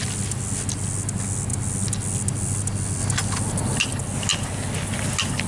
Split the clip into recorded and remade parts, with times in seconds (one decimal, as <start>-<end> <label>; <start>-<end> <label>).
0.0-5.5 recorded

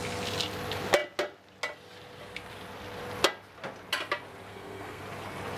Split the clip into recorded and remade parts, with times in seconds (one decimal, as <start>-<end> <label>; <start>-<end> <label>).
0.0-4.5 recorded; 4.5-5.0 remade; 5.0-5.6 recorded

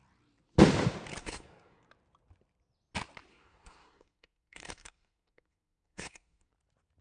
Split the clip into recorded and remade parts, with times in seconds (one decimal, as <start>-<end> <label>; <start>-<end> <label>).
0.0-1.2 recorded; 1.2-1.9 remade; 1.9-3.3 recorded; 3.3-6.5 remade; 6.5-7.0 recorded

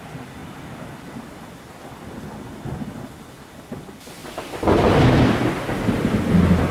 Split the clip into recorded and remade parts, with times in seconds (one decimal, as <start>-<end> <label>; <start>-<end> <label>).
0.0-6.7 recorded